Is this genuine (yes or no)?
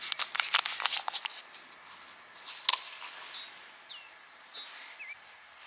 yes